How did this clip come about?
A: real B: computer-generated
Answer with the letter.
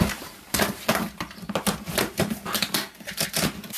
A